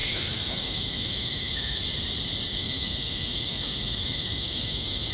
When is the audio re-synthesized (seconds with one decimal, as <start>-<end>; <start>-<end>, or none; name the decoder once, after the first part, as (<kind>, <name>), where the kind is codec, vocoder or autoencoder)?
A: 0.0-1.8 (autoencoder, DAC-VAE); 2.5-5.1